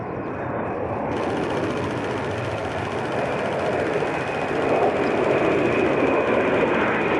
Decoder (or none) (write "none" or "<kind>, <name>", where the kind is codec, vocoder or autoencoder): none